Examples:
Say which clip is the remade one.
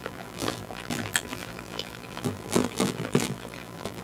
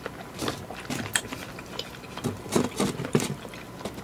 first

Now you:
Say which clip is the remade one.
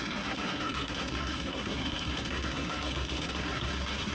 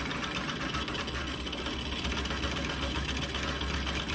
first